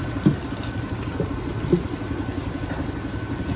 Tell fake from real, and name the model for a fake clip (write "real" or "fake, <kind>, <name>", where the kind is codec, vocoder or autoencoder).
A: real